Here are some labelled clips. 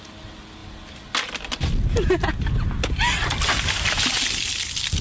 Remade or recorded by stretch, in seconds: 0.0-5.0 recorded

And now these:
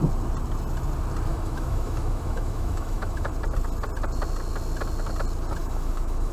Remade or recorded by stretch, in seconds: 0.0-1.3 recorded; 1.3-3.3 remade; 3.3-5.6 recorded; 5.6-6.3 remade

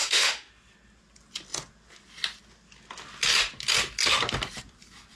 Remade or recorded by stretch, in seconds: 0.0-0.5 remade; 0.5-5.2 recorded